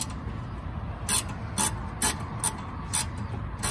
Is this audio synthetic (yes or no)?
no